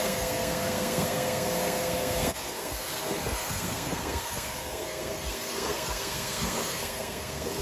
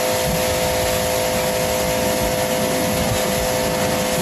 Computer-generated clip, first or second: first